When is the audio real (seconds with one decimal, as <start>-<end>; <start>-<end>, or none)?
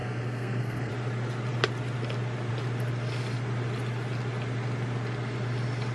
0.9-5.9